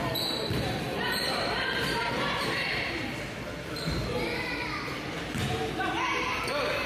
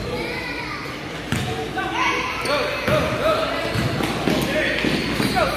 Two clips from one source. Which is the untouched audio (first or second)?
second